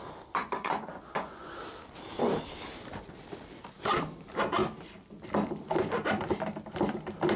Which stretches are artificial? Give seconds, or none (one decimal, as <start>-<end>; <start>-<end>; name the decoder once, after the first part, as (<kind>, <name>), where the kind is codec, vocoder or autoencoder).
0.4-1.6 (vocoder, Vocos)